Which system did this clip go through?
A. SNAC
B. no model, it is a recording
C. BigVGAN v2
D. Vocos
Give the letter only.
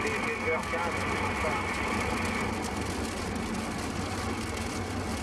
B